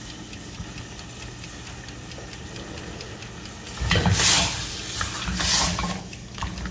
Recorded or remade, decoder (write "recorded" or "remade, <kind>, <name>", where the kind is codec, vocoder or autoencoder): recorded